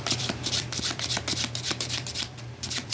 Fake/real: fake